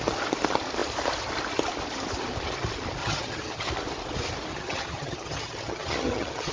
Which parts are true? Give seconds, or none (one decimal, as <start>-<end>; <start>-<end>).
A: 0.0-3.0; 3.7-4.5